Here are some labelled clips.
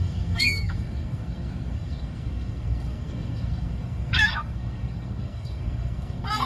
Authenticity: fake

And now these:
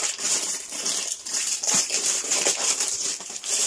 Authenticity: fake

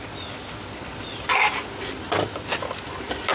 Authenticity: real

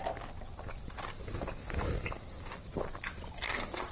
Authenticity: real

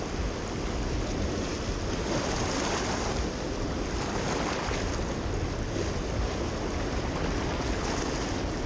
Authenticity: real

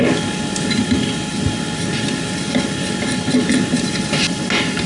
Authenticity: real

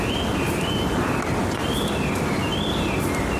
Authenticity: real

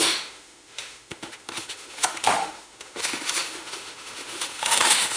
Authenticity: fake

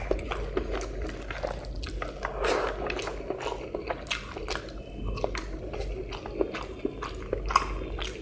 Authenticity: real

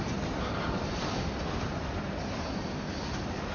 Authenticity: real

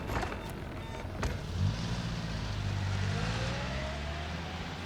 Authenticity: real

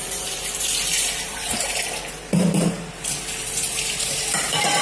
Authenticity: fake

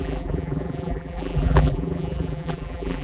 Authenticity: fake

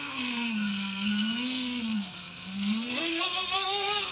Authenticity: fake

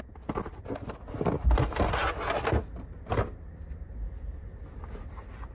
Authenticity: real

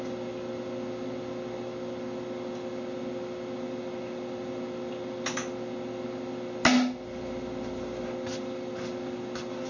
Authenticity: real